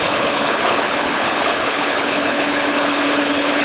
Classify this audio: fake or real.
fake